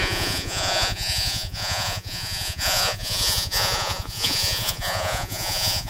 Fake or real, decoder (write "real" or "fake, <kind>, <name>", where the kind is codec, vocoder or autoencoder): fake, vocoder, Vocos